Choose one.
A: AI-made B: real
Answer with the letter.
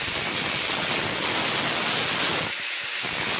B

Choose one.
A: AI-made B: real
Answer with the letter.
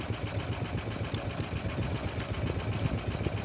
B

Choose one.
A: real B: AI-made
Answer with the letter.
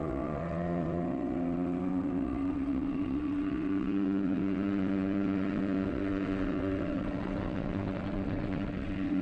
B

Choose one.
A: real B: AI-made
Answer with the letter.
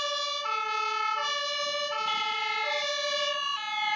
A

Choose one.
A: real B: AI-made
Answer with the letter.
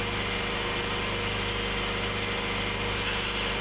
A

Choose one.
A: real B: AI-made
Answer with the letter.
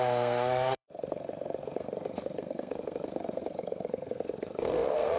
B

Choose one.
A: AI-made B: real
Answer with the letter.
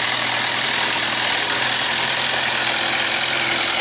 B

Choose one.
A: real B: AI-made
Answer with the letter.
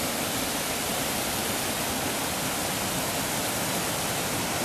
A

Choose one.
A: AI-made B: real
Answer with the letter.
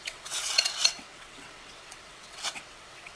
A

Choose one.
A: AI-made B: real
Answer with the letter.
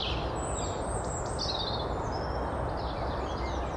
B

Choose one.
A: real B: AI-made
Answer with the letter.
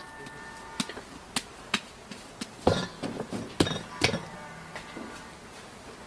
A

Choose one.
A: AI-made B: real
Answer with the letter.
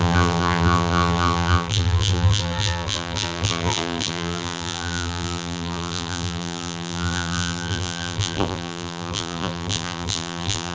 A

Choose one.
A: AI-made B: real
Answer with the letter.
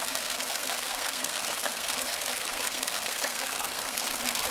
A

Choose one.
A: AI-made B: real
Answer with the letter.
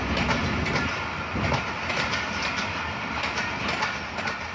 B